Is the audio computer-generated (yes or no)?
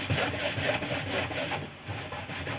no